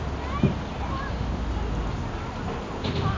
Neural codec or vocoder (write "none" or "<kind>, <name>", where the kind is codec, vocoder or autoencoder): none